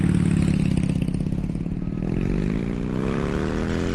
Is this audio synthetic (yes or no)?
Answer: no